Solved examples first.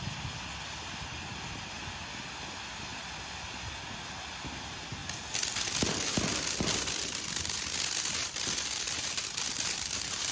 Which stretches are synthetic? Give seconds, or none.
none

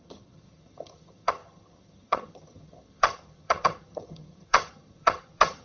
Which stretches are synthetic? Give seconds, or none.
0.0-5.6 (vocoder, HiFi-GAN)

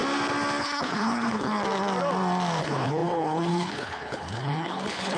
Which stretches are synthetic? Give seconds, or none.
0.6-1.5 (codec, HILCodec); 2.6-5.2

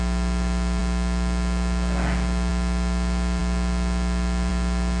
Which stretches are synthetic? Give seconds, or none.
none